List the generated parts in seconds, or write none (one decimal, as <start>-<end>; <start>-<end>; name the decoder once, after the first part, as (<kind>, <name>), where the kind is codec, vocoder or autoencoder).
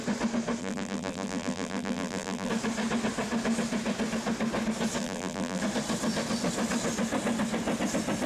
0.6-2.5 (vocoder, BigVGAN v2); 5.0-5.6